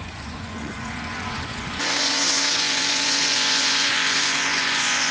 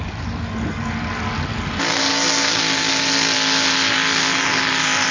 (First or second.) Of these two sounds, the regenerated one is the first